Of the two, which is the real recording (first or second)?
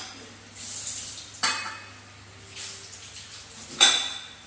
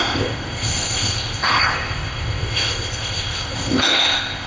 first